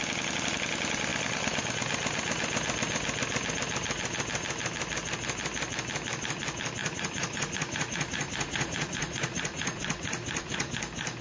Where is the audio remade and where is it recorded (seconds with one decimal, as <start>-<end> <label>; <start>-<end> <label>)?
0.0-6.8 recorded; 6.8-10.7 remade; 10.7-11.2 recorded